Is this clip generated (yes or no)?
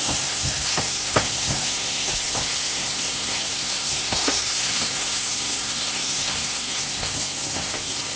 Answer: yes